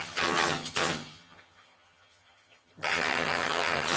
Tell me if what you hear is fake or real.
fake